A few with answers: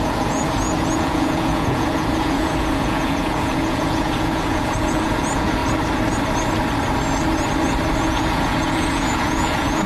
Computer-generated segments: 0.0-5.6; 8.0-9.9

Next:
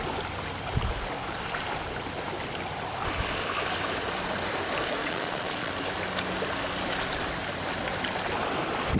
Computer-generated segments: 5.0-5.7

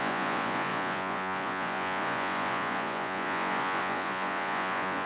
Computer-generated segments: 0.0-5.1

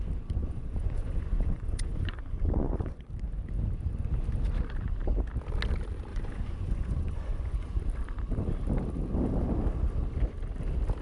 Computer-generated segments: 0.4-3.1; 6.1-7.8